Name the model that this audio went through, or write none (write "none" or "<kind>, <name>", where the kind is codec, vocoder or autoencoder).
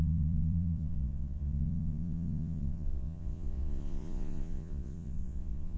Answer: vocoder, Vocos